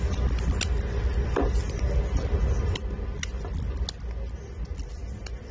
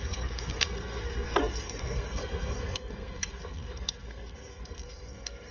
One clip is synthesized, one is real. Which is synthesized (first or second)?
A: second